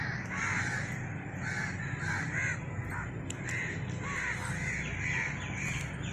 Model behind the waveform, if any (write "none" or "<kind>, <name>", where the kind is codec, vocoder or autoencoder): none